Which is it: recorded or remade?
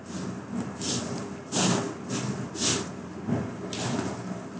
recorded